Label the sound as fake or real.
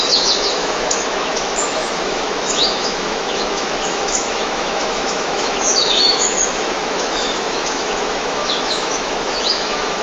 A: fake